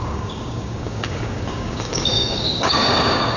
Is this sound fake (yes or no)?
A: yes